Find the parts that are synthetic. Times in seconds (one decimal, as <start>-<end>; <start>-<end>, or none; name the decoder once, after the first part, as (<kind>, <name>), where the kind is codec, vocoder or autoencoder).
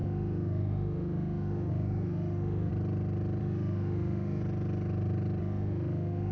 0.0-2.7 (autoencoder, DAC-VAE); 3.4-4.4; 5.4-6.3